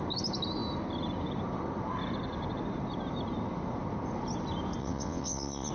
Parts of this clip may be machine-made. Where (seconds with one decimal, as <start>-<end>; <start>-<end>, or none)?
4.8-5.7